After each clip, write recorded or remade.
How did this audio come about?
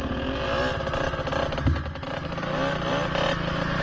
recorded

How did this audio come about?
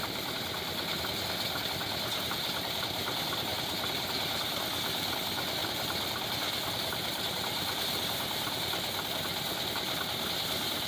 recorded